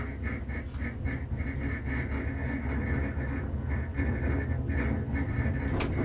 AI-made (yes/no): no